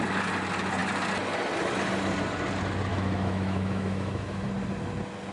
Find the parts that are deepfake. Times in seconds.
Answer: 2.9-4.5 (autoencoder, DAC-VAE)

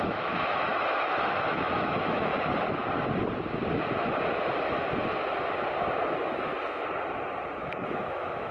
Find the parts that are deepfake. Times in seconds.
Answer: 0.0-2.3 (autoencoder, DAC-VAE); 6.1-6.5; 7.6-8.5

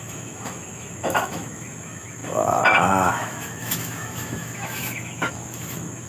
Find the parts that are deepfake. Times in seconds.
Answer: 0.0-6.1 (autoencoder, DAC-VAE)